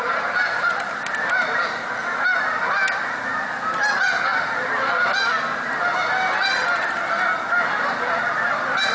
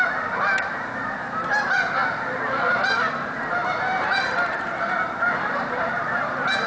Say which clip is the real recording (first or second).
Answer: first